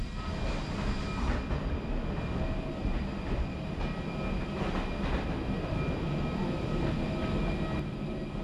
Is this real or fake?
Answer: real